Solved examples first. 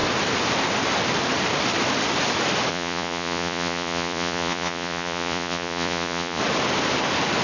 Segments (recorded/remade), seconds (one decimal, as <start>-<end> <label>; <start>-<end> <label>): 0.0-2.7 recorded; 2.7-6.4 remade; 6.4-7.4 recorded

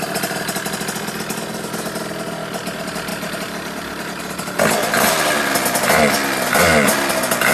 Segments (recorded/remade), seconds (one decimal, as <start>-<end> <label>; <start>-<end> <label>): 0.0-3.1 recorded; 3.1-4.2 remade; 4.2-7.5 recorded

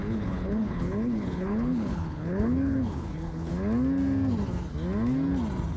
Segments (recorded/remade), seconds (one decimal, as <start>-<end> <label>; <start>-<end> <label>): 0.0-3.5 remade; 3.5-5.8 recorded